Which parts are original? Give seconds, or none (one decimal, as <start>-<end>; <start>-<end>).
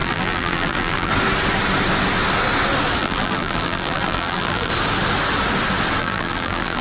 1.1-3.0; 4.7-6.0